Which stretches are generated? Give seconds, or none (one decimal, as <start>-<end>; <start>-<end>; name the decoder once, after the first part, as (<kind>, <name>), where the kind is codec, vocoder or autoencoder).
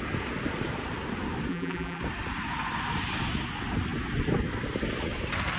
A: 1.5-2.0 (vocoder, BigVGAN v2)